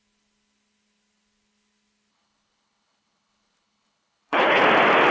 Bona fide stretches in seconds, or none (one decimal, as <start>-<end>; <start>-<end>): 0.0-2.1; 4.6-5.1

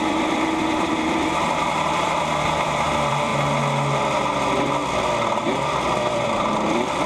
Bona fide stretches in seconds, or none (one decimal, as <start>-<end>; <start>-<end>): 3.3-5.5